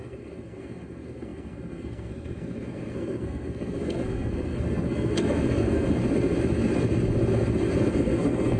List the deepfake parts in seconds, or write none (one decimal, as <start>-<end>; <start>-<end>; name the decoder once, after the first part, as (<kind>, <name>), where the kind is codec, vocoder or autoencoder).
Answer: 0.0-6.0 (codec, SNAC); 7.8-8.6